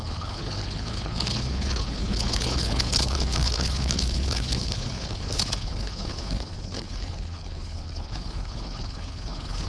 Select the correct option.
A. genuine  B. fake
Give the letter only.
B